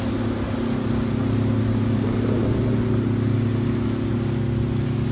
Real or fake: real